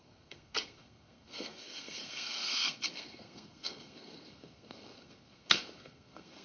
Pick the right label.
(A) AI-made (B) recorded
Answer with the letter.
A